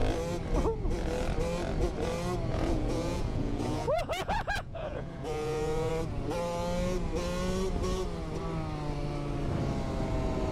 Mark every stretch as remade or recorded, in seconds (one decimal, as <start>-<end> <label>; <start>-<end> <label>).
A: 0.0-2.5 recorded; 2.5-5.9 remade; 5.9-10.5 recorded